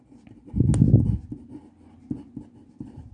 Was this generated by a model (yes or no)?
no